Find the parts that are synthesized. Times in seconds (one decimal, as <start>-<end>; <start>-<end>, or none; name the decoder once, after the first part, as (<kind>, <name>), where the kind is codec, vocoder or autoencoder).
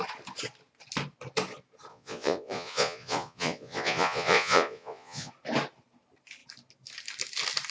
1.9-5.3 (vocoder, Vocos)